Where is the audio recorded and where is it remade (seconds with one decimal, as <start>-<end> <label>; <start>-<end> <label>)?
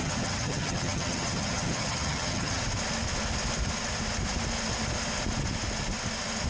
0.0-2.6 remade; 2.6-6.5 recorded